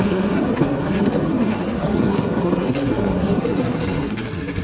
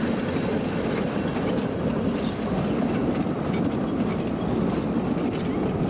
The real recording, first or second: second